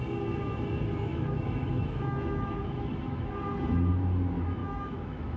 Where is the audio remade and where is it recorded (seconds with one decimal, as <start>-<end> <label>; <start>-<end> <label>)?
0.0-1.1 recorded; 1.1-3.3 remade; 3.3-4.6 recorded; 4.6-5.4 remade